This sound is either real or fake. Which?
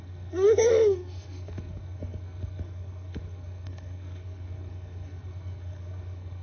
fake